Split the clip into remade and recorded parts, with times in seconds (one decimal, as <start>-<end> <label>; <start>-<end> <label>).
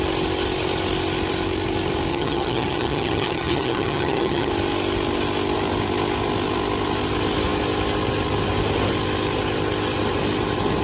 0.0-2.1 recorded; 2.1-4.5 remade; 4.5-10.8 recorded